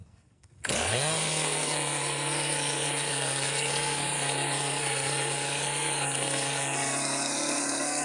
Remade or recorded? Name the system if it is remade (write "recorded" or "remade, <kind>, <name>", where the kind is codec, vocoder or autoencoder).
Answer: remade, codec, SNAC